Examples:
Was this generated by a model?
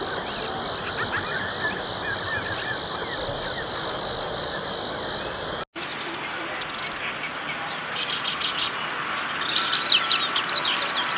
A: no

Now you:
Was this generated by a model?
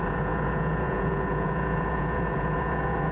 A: yes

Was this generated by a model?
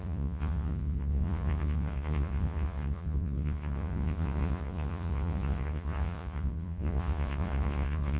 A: yes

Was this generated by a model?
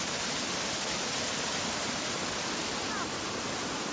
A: no